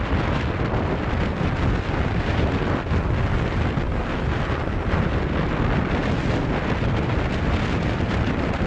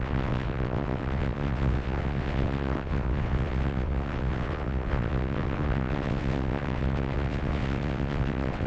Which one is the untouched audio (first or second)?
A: first